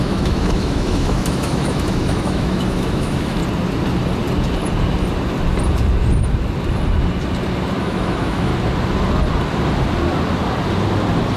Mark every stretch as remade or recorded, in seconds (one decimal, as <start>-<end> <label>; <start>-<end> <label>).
0.0-3.4 remade; 3.4-7.8 recorded; 7.8-8.5 remade; 8.5-11.4 recorded